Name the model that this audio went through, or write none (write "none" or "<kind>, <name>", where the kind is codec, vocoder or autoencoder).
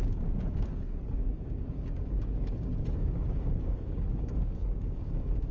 codec, DAC